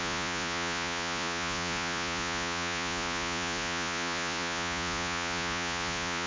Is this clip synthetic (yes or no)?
yes